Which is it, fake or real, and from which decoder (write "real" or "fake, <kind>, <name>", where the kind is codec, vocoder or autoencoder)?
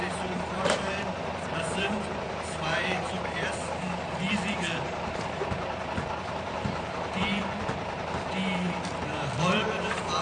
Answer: fake, vocoder, BigVGAN v2